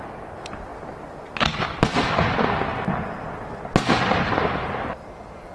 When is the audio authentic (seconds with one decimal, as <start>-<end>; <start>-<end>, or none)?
0.7-4.0